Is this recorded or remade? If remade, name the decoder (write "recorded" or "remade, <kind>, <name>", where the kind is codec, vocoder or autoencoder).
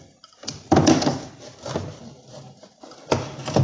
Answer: recorded